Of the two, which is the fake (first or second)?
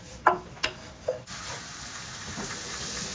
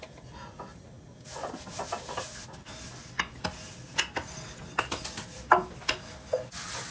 first